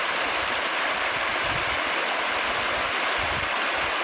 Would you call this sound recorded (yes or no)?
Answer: no